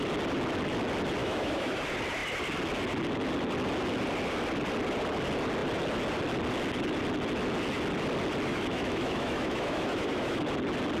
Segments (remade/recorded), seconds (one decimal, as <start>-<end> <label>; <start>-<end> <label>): 0.0-1.2 recorded; 1.2-1.8 remade; 1.8-8.5 recorded; 8.5-10.4 remade; 10.4-11.0 recorded